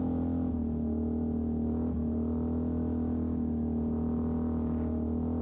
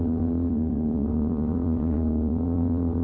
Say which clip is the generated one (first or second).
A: second